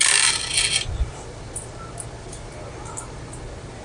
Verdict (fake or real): real